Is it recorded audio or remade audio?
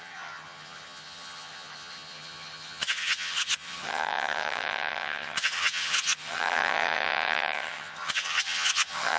remade